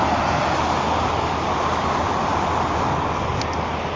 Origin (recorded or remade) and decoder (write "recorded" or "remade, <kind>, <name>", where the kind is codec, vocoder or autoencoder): recorded